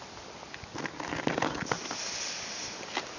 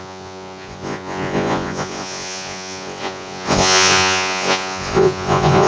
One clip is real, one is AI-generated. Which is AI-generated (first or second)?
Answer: second